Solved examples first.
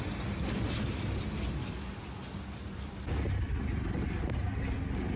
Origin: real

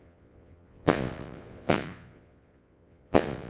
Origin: fake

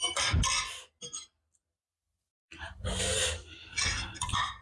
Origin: real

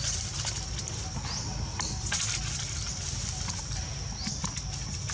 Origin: real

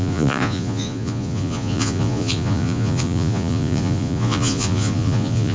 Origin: fake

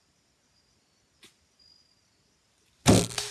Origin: real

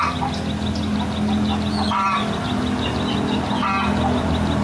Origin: real